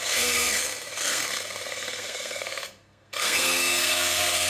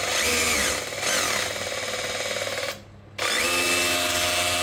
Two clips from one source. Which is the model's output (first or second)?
first